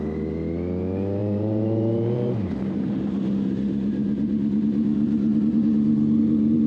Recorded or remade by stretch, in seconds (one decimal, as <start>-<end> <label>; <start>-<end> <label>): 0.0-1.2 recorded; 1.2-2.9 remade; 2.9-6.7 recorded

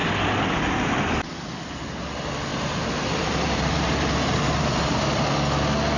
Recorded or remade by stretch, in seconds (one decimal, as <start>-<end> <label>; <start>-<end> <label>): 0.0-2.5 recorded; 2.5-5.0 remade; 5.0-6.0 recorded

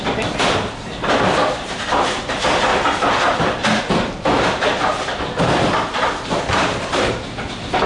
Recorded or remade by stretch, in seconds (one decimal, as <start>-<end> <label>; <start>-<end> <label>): 0.0-2.7 remade; 2.7-3.8 recorded; 3.8-7.9 remade

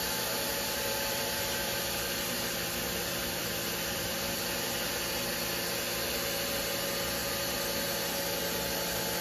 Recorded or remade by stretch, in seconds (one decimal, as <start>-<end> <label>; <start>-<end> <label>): 0.0-0.5 recorded; 0.5-4.9 remade; 4.9-9.2 recorded